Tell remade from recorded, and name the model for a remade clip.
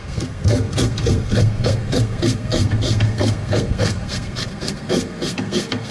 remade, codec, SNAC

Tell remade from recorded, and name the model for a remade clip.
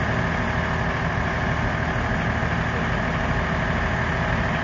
recorded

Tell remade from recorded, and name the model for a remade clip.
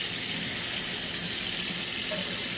recorded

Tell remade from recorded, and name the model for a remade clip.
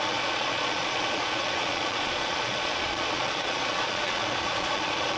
remade, vocoder, Vocos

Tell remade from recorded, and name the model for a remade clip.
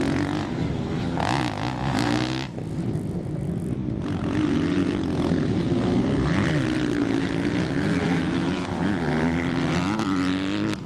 recorded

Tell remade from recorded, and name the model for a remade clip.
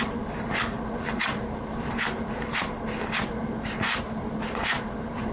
remade, vocoder, BigVGAN v2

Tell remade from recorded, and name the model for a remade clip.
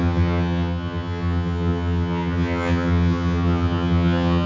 remade, vocoder, HiFi-GAN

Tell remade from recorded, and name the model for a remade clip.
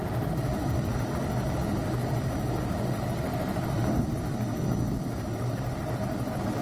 recorded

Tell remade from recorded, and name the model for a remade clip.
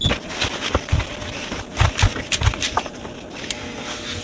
recorded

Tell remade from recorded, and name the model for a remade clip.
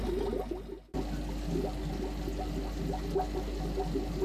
recorded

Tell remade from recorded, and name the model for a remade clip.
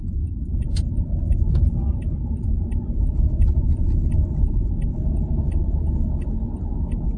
remade, vocoder, BigVGAN v2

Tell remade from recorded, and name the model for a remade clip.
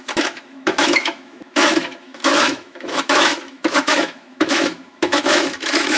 remade, autoencoder, DAC-VAE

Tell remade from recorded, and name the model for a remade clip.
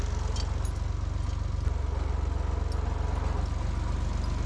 recorded